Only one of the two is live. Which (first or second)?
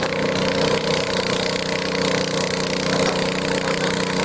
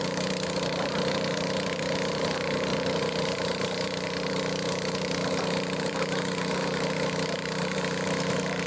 first